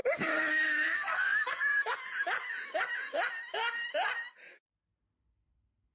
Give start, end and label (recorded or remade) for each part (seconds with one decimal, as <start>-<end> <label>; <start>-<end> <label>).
0.0-0.5 recorded; 0.5-1.7 remade; 1.7-5.2 recorded; 5.2-5.9 remade